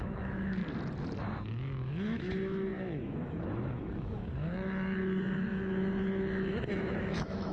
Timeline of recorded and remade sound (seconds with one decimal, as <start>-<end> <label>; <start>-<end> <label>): 0.0-0.6 remade; 0.6-1.2 recorded; 1.2-7.5 remade